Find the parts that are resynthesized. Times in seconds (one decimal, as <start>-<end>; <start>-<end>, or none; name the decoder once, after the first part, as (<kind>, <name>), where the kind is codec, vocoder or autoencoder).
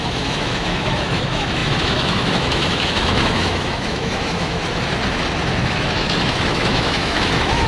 0.0-4.6 (autoencoder, DAC-VAE); 5.6-7.7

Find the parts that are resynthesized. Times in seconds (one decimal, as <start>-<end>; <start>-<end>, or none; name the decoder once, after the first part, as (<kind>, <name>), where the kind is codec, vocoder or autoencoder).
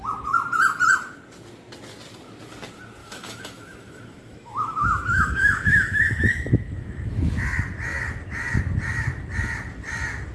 3.0-7.2 (autoencoder, DAC-VAE)